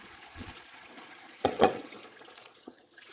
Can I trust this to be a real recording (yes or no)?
no